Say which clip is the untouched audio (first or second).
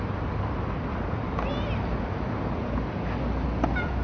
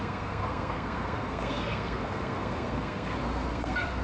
first